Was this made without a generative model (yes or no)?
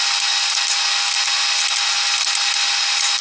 yes